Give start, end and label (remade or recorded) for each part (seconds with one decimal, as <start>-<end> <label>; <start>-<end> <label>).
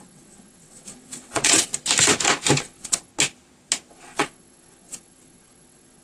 0.0-1.7 remade; 1.7-2.6 recorded; 2.6-3.1 remade; 3.1-3.9 recorded; 3.9-6.0 remade